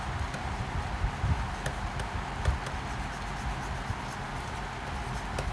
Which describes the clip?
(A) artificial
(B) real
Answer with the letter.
B